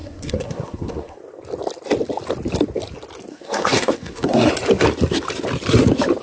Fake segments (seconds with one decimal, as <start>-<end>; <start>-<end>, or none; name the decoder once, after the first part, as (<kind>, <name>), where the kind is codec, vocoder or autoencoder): 0.0-1.2 (codec, SNAC); 3.3-4.5